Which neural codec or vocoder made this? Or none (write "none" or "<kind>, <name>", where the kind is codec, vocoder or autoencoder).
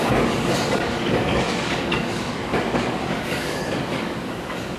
codec, DAC